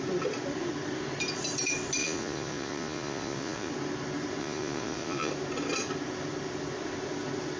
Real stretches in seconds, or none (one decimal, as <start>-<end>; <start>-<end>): 0.0-2.0; 3.7-4.4; 5.3-7.6